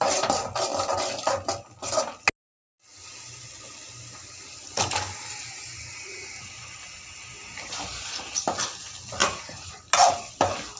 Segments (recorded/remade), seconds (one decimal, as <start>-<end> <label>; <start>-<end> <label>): 0.0-5.8 recorded; 5.8-6.3 remade; 6.3-9.2 recorded; 9.2-9.8 remade; 9.8-10.8 recorded